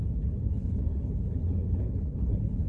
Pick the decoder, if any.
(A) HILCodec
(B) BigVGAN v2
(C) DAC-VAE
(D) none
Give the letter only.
A